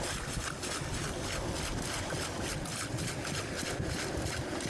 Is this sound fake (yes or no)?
no